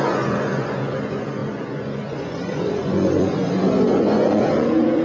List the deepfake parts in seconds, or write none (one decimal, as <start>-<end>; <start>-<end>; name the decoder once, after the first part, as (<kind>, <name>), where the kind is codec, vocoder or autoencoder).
0.0-5.0 (vocoder, Vocos)